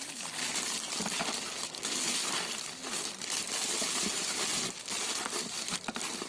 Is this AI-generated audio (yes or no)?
no